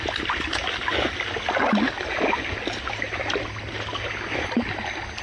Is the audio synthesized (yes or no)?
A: no